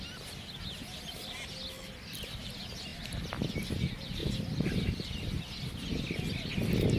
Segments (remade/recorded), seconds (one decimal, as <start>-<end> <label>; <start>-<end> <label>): 0.0-2.9 recorded; 2.9-3.5 remade; 3.5-4.2 recorded; 4.2-5.3 remade; 5.3-7.0 recorded